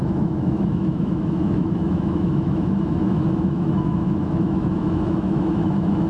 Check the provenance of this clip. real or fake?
fake